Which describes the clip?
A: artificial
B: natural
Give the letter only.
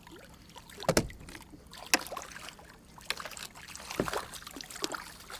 B